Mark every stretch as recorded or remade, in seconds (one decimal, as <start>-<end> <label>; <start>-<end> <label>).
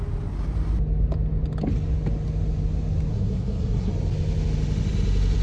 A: 0.0-3.1 recorded; 3.1-3.9 remade; 3.9-5.4 recorded